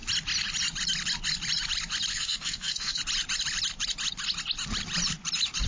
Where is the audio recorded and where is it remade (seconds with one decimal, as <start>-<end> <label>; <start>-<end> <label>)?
0.0-2.1 recorded; 2.1-3.0 remade; 3.0-5.7 recorded